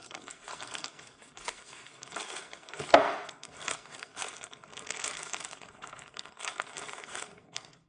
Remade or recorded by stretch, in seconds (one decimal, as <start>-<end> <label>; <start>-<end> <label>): 0.0-7.9 remade